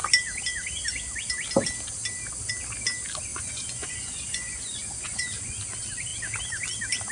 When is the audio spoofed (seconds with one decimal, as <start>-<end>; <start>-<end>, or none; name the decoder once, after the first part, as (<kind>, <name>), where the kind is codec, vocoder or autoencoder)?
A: 3.3-5.6 (vocoder, Vocos)